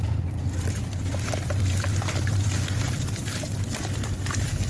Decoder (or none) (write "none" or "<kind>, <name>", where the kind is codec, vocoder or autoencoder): vocoder, BigVGAN v2